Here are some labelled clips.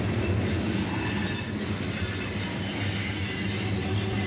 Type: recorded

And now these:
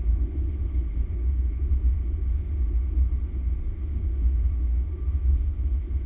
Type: remade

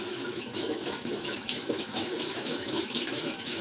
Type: remade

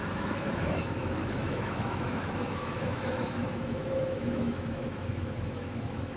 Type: remade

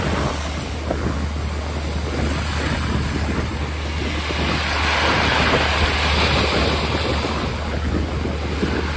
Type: recorded